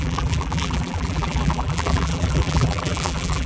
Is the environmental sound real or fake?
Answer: fake